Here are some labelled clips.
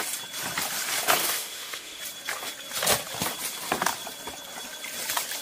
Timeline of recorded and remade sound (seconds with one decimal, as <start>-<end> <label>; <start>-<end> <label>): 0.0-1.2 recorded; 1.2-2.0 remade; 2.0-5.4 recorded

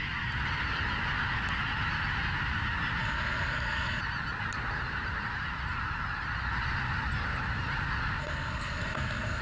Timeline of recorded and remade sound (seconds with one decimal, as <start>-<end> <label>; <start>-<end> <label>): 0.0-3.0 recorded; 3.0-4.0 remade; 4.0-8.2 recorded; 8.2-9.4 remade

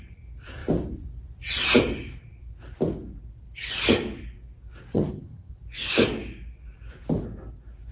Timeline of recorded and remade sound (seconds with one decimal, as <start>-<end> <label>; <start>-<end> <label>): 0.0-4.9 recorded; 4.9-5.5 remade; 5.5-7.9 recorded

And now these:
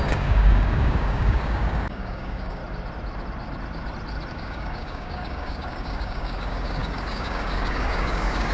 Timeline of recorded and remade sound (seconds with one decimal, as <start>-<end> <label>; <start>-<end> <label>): 0.0-2.6 remade; 2.6-4.3 recorded; 4.3-8.5 remade

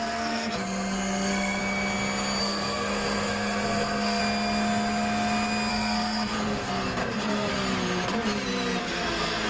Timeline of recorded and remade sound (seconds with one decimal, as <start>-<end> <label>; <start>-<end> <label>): 0.0-1.6 remade; 1.6-2.4 recorded; 2.4-4.2 remade; 4.2-5.7 recorded; 5.7-7.5 remade; 7.5-8.8 recorded; 8.8-9.5 remade